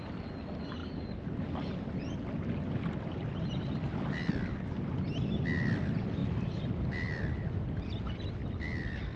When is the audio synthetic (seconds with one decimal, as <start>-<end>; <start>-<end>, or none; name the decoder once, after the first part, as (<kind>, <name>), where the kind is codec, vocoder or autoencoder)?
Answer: 6.2-6.9 (vocoder, BigVGAN v2)